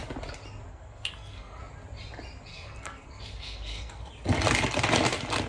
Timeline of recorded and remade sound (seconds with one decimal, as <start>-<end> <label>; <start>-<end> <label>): 0.0-0.7 recorded; 0.7-1.6 remade; 1.6-2.5 recorded; 2.5-4.1 remade; 4.1-5.5 recorded